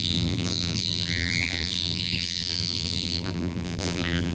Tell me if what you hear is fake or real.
fake